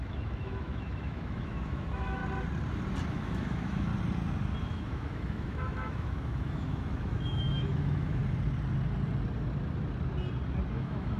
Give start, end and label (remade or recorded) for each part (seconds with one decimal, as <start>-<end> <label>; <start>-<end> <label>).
0.0-2.2 remade; 2.2-3.1 recorded; 3.1-3.9 remade; 3.9-4.6 recorded; 4.6-8.2 remade; 8.2-10.7 recorded; 10.7-11.2 remade

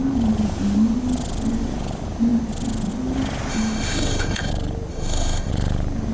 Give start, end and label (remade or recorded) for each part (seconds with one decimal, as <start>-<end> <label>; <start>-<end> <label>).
0.0-3.5 recorded; 3.5-4.5 remade; 4.5-4.9 recorded; 4.9-5.5 remade; 5.5-6.1 recorded